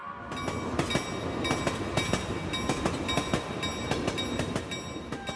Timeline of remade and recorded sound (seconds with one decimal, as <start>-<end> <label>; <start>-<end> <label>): 0.0-5.4 recorded